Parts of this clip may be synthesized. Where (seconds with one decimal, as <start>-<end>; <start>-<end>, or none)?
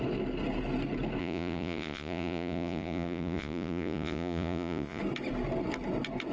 1.2-5.0